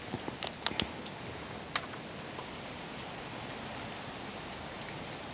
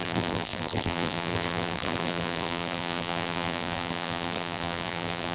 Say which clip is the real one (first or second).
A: first